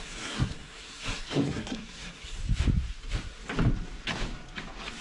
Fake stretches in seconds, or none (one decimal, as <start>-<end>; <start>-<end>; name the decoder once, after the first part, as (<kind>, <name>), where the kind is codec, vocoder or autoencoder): 0.0-2.4 (codec, SNAC)